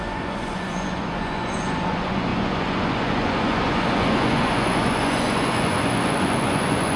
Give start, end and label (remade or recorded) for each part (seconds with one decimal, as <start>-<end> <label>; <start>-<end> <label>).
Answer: 0.0-7.0 remade